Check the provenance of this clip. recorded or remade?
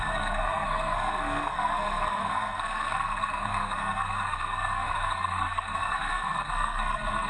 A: remade